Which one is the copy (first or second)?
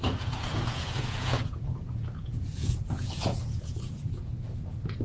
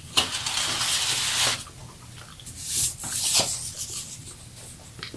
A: first